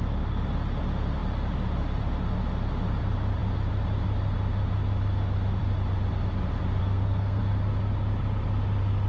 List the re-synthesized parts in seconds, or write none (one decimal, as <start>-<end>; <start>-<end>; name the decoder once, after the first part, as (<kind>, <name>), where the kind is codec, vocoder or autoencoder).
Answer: 6.8-7.4 (codec, SNAC)